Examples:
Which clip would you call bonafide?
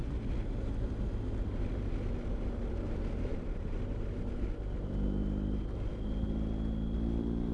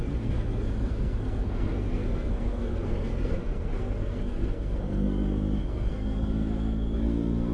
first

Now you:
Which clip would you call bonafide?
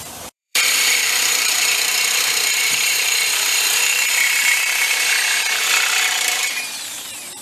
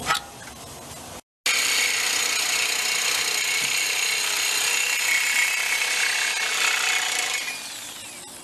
second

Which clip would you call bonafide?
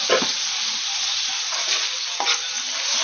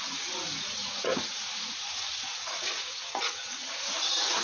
first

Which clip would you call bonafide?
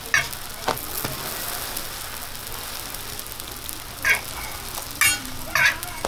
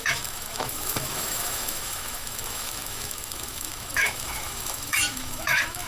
first